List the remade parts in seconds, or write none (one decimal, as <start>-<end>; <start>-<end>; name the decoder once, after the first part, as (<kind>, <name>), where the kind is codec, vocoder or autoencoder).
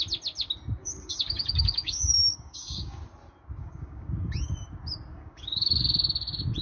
0.8-3.0 (codec, DAC); 3.6-4.5; 5.1-5.8